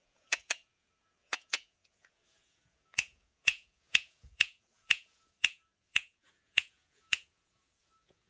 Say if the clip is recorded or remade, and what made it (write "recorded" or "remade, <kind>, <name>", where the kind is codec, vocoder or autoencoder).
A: remade, vocoder, Vocos